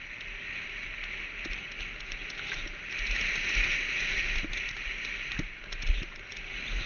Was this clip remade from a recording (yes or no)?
no